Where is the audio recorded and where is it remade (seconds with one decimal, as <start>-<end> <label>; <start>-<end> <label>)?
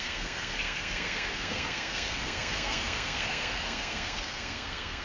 0.0-5.0 remade